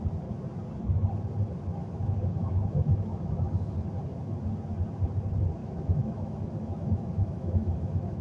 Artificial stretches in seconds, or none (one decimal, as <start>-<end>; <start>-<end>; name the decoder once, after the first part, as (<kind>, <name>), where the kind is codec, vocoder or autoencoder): 1.8-3.7 (autoencoder, DAC-VAE); 5.6-8.2